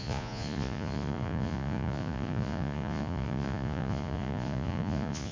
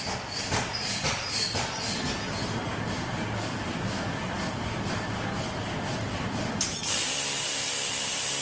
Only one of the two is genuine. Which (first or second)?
second